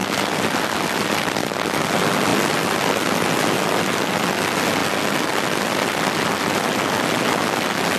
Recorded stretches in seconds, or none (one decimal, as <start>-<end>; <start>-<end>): 0.0-8.0